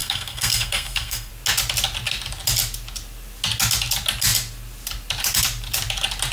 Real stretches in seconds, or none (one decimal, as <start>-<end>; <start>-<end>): 1.3-6.3